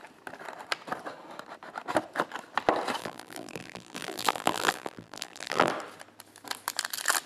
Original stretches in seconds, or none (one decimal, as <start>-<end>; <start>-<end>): 0.0-3.0; 5.7-7.3